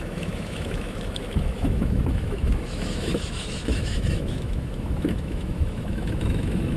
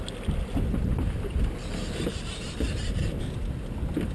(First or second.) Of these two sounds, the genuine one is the second